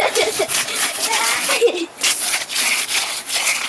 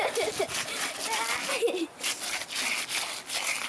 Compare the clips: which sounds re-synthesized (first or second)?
first